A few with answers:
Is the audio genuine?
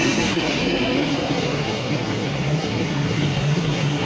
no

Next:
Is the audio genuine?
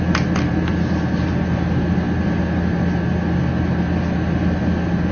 yes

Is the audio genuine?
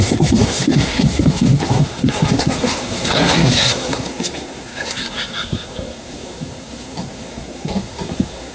no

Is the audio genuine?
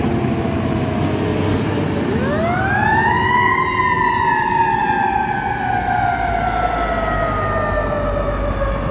yes